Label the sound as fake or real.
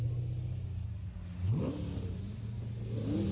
real